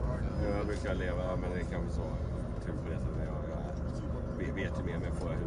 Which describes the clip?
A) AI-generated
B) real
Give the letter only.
B